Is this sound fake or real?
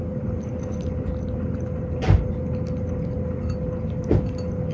real